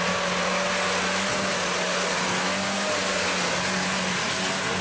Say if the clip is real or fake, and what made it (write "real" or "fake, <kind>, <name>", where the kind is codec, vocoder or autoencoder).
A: real